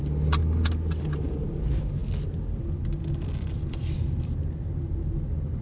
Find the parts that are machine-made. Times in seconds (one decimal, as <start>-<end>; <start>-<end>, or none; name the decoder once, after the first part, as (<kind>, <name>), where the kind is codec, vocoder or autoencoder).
none